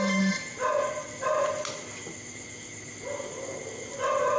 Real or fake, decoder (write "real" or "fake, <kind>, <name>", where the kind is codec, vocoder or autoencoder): real